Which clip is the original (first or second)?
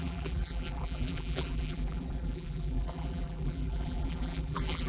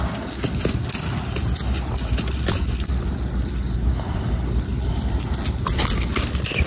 second